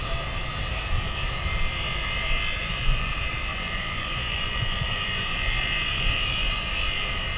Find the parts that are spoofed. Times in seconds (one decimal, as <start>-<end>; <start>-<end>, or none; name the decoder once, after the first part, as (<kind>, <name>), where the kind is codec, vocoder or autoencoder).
2.6-3.1 (vocoder, Vocos); 3.5-6.7